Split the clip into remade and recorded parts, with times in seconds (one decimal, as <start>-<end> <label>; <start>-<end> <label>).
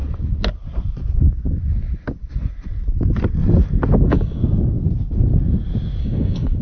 0.0-4.0 recorded; 4.0-4.4 remade; 4.4-6.0 recorded; 6.0-6.6 remade